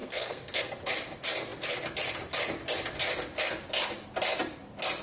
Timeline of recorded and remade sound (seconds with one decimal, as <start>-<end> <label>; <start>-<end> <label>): 0.0-0.7 remade; 0.7-5.0 recorded